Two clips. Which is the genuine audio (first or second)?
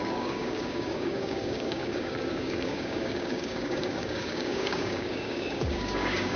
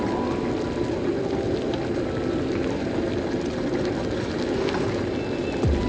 second